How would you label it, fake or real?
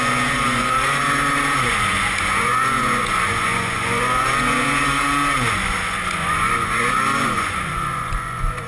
fake